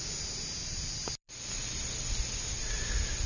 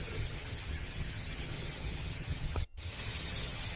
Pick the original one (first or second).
first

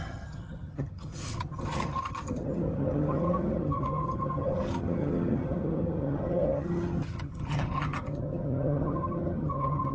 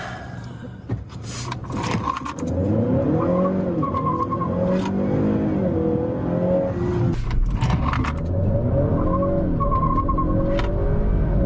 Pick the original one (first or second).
second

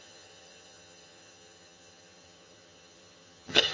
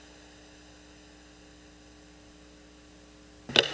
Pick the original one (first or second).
second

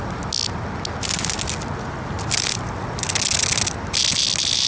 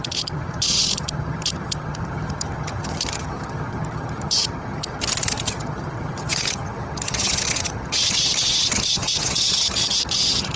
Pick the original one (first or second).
first